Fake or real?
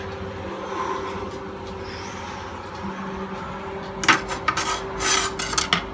real